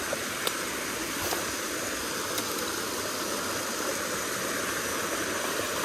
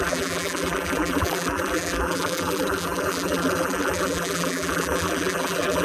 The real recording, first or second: first